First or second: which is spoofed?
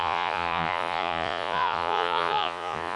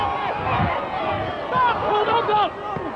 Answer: first